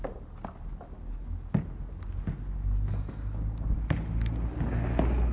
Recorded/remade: recorded